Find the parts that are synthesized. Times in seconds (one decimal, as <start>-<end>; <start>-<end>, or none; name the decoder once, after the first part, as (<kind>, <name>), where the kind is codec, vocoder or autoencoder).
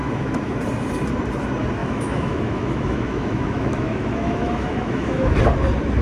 0.0-0.6 (autoencoder, DAC-VAE); 1.8-5.4